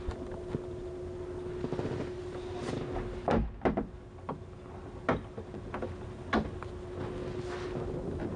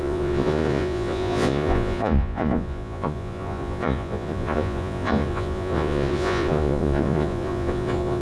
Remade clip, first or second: second